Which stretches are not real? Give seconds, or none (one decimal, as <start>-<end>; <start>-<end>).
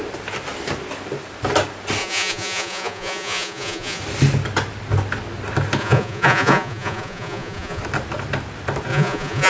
2.0-4.0; 5.8-7.8; 8.9-9.5